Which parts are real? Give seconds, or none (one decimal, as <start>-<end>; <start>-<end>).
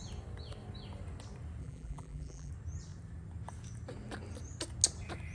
0.0-1.6; 2.5-5.3